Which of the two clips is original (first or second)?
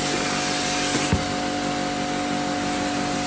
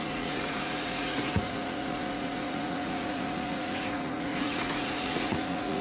first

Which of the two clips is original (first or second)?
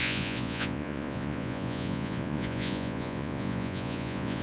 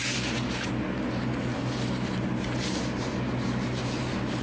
second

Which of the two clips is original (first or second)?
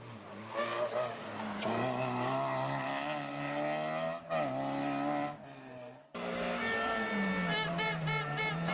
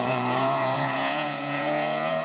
first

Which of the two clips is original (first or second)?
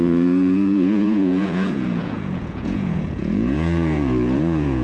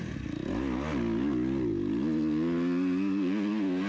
second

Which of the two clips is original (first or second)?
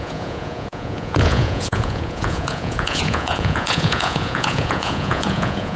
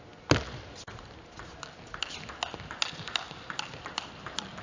second